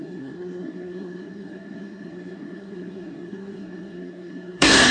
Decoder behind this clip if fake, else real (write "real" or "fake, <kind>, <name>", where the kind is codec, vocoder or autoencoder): fake, codec, SNAC